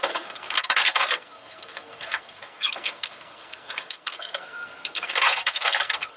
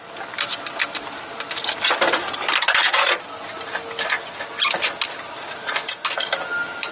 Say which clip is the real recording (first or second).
second